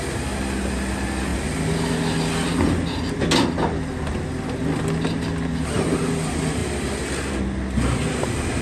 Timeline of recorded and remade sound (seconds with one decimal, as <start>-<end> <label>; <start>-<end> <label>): 0.0-8.6 recorded